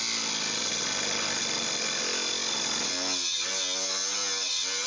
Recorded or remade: recorded